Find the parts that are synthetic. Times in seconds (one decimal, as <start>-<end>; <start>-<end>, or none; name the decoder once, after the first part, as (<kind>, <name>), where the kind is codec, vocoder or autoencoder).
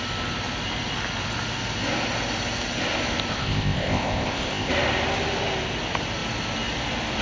3.3-4.7 (codec, ZipCodec)